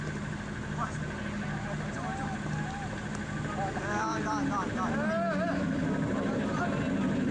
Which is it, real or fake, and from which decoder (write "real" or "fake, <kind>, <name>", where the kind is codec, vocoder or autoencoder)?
real